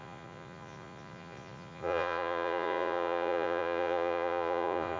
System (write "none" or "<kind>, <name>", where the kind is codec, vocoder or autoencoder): vocoder, Vocos